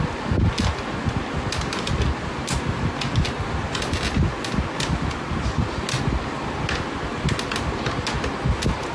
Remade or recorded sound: recorded